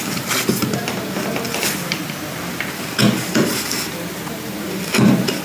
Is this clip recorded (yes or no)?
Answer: yes